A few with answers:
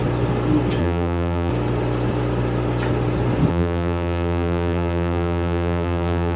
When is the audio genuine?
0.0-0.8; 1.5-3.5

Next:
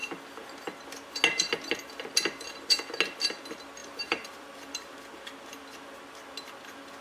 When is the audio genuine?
0.0-3.8; 4.9-7.0

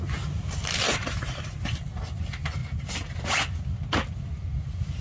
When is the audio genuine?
0.0-1.0; 2.0-5.0

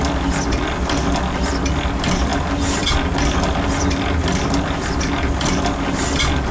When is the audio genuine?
0.0-6.5

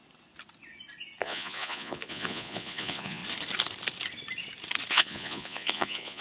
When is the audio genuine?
0.0-1.2; 3.2-4.9

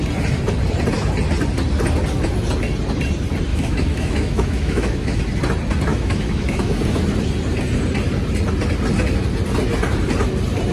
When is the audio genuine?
0.0-3.5; 5.2-5.9; 6.7-10.7

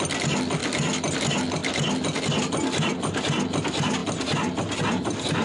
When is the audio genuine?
0.0-5.4